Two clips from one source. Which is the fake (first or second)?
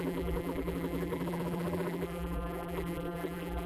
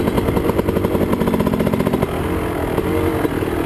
first